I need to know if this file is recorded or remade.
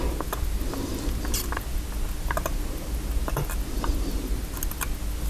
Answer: recorded